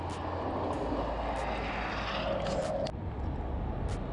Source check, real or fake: real